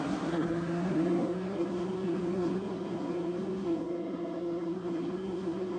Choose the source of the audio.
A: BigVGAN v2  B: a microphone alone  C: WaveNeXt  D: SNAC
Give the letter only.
D